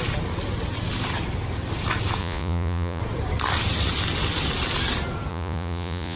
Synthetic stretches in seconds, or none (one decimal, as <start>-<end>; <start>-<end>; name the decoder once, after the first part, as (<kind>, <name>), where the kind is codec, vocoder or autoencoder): 2.2-3.0 (vocoder, Vocos); 5.3-6.2